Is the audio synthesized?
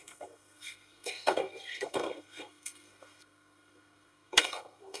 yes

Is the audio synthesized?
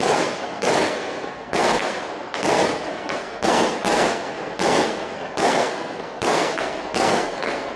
yes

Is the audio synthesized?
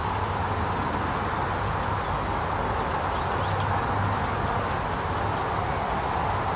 no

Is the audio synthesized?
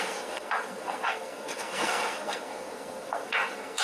yes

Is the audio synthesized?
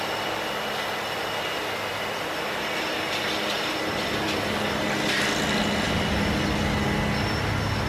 no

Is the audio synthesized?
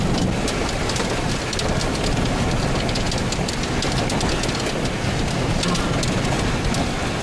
no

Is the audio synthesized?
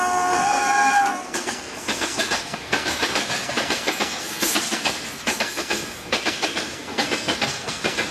yes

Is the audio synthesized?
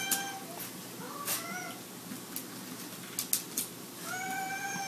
no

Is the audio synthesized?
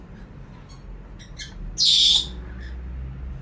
no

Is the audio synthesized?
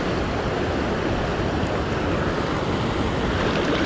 no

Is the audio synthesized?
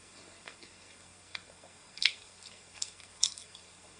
yes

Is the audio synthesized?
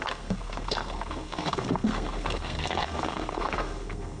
yes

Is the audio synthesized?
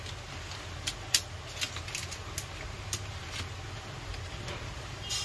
no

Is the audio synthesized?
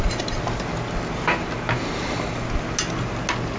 no